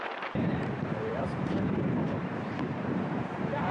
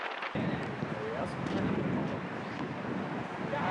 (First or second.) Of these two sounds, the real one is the second